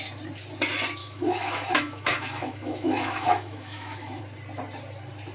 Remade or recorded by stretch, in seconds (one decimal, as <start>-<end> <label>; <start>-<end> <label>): 0.0-1.0 recorded; 1.0-4.2 remade; 4.2-5.3 recorded

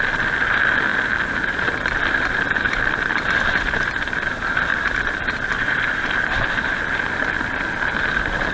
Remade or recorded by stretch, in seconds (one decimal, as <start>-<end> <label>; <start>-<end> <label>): 0.0-8.5 recorded

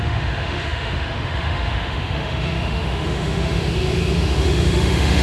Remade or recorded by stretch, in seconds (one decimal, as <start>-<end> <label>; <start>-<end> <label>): 0.0-5.2 remade

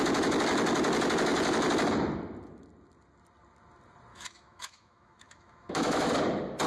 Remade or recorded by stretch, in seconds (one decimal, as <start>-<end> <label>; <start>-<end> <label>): 0.0-4.1 recorded; 4.1-6.1 remade; 6.1-6.7 recorded

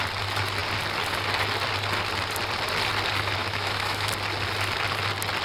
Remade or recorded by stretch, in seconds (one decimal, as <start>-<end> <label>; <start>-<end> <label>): 0.0-3.4 recorded; 3.4-4.1 remade; 4.1-5.4 recorded